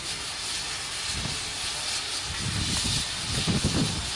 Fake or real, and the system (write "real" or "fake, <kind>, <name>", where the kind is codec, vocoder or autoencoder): real